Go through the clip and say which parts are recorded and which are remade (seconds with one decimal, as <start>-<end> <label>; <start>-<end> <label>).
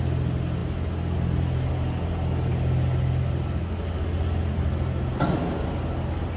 0.0-6.4 recorded